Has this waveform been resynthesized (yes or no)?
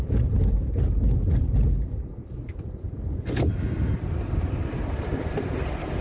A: no